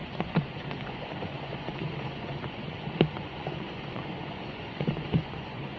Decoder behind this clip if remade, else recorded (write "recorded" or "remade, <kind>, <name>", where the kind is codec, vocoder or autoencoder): remade, vocoder, Vocos